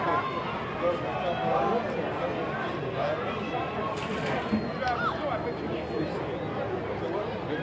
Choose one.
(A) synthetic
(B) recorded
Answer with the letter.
B